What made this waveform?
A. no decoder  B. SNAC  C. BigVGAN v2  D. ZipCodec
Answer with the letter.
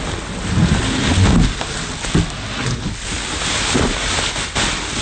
A